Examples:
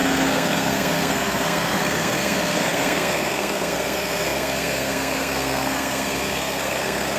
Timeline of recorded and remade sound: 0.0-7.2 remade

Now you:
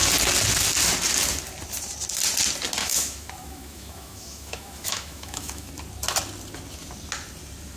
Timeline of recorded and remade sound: 0.0-2.8 recorded; 2.8-5.7 remade; 5.7-7.8 recorded